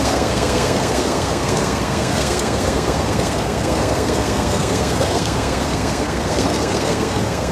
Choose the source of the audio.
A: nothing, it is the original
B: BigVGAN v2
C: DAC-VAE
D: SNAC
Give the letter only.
D